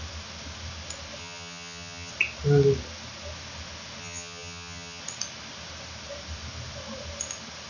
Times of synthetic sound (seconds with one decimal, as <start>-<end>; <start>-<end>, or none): 1.2-2.1; 4.0-5.0

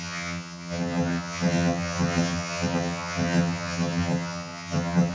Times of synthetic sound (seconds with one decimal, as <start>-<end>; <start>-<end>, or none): 0.0-5.1